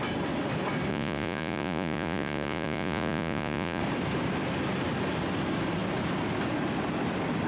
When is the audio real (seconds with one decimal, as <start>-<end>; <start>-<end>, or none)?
0.0-0.9; 3.8-7.5